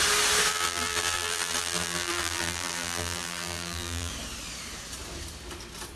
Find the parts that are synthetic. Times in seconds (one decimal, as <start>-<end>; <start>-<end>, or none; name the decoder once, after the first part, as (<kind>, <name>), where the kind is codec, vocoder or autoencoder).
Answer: 0.5-4.1 (vocoder, BigVGAN v2)